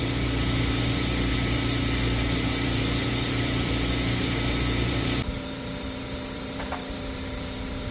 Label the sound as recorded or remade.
remade